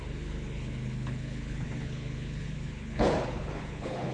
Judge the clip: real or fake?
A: fake